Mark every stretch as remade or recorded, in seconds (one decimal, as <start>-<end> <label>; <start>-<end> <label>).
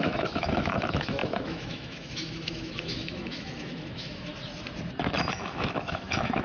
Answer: 0.0-4.3 remade; 4.3-5.3 recorded; 5.3-6.4 remade